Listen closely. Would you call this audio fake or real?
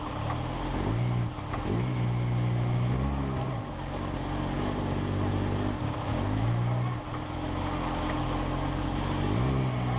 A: real